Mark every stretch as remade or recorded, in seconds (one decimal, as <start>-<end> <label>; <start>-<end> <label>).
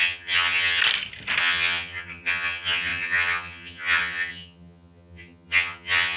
0.0-0.8 remade; 0.8-1.4 recorded; 1.4-6.2 remade